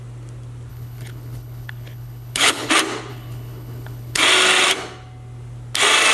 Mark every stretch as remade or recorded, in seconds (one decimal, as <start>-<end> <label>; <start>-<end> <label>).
0.0-0.7 recorded; 0.7-2.7 remade; 2.7-3.1 recorded; 3.1-4.2 remade; 4.2-6.1 recorded